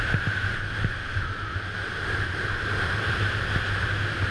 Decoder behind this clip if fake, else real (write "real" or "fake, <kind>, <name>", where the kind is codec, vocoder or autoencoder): real